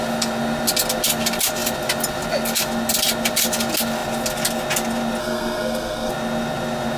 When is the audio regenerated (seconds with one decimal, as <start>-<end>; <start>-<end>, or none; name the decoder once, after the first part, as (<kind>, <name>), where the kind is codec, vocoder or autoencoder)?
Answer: 5.2-6.1 (codec, SNAC)

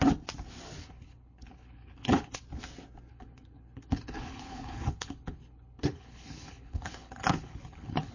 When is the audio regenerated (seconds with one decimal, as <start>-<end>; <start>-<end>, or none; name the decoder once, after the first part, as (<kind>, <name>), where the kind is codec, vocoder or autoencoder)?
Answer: 0.8-2.4 (codec, HILCodec); 3.1-8.1

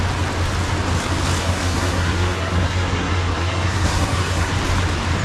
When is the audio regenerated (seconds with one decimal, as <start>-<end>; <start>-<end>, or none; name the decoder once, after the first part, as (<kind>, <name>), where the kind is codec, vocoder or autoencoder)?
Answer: 1.4-4.5 (codec, SNAC)

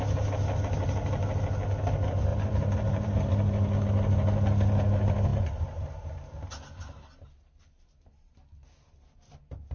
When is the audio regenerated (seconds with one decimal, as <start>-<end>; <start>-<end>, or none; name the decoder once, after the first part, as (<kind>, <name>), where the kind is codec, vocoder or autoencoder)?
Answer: 2.3-3.3 (vocoder, BigVGAN v2); 5.3-6.2

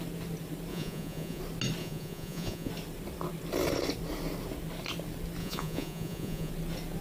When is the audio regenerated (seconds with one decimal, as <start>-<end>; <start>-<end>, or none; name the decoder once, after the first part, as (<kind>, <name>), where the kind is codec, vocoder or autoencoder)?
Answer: 0.7-1.4 (vocoder, Vocos); 1.8-2.7; 5.4-6.5

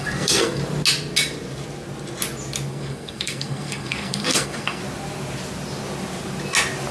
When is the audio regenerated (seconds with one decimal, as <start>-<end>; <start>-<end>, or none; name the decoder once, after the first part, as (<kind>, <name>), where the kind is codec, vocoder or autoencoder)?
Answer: 0.0-0.6 (codec, SNAC); 2.7-4.8